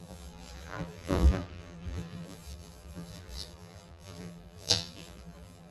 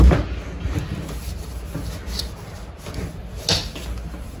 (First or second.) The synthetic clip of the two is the first